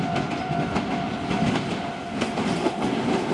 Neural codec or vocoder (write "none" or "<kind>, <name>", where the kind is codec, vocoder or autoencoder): none